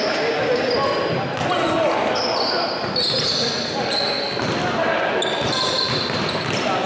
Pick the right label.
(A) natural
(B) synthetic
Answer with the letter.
A